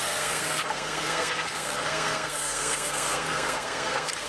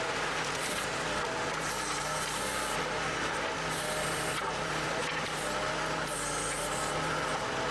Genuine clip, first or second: second